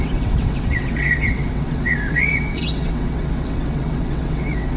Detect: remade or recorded remade